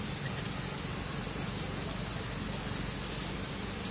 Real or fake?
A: real